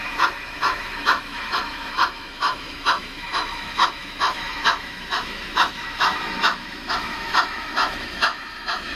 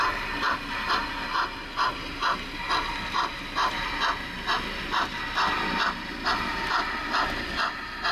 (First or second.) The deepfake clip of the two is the first